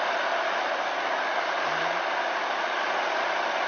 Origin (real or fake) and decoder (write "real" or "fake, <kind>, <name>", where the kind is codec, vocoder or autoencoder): real